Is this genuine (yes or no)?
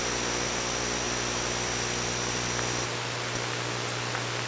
yes